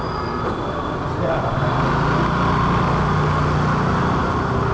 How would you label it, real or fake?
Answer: real